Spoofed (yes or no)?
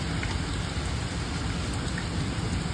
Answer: no